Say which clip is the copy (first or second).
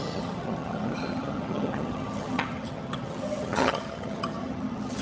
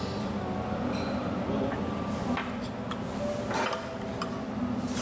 first